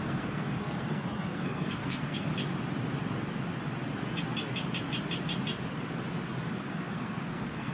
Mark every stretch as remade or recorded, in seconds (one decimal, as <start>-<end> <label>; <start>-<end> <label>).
0.0-2.3 remade; 2.3-6.5 recorded; 6.5-7.7 remade